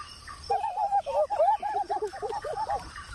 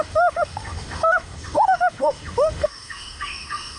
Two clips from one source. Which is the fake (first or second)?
second